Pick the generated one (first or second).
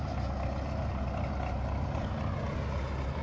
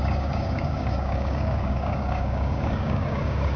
second